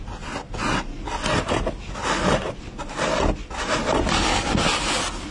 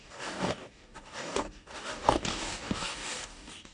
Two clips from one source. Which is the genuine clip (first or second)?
first